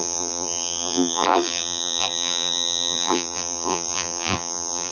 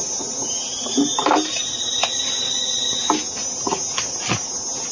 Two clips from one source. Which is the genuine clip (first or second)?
second